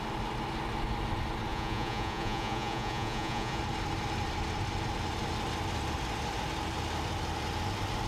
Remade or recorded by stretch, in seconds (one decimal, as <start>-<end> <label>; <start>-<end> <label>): 0.0-1.5 recorded; 1.5-3.6 remade; 3.6-8.1 recorded